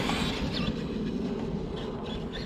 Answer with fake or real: real